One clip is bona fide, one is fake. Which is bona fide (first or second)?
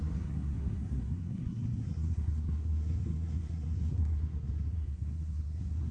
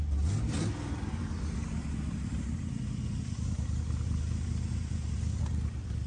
second